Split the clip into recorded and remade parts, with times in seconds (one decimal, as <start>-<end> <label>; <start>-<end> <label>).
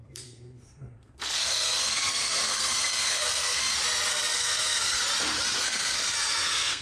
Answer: 0.0-3.6 remade; 3.6-4.1 recorded; 4.1-5.0 remade; 5.0-5.6 recorded; 5.6-6.8 remade